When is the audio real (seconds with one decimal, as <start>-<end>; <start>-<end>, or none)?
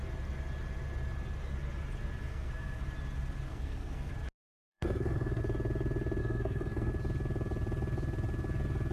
0.0-2.3; 2.8-3.5; 4.1-4.7; 5.4-6.2; 6.9-8.9